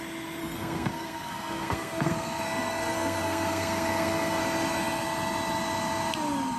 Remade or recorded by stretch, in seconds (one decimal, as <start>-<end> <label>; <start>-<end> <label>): 0.0-0.4 recorded; 0.4-4.4 remade; 4.4-6.6 recorded